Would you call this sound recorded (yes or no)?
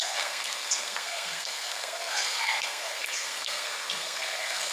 no